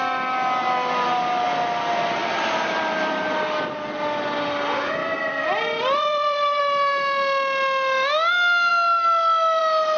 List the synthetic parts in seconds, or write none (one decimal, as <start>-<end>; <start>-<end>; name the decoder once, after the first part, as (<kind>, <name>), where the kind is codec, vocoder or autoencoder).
2.2-3.1 (vocoder, BigVGAN v2); 5.0-6.6